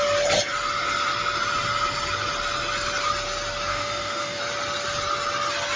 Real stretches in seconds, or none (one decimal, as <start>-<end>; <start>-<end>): 0.0-3.7; 4.4-5.8